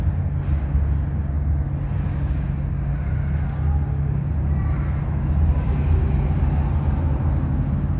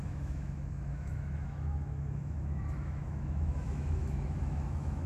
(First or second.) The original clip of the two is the first